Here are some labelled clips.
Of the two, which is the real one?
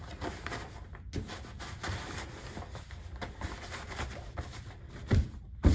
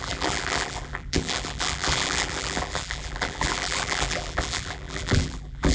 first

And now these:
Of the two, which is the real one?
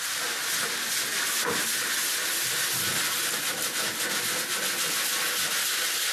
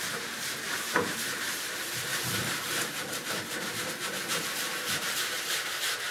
first